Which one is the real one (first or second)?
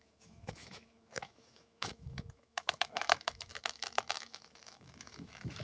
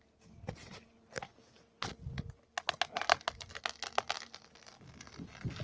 second